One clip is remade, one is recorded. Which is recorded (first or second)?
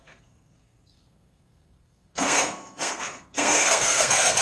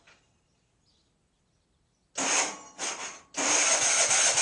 second